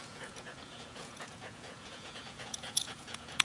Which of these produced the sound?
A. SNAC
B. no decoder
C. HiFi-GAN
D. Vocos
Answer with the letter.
D